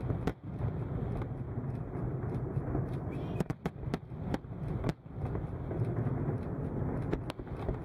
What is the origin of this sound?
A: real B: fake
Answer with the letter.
A